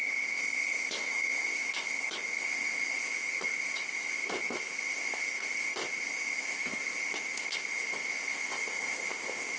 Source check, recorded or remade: remade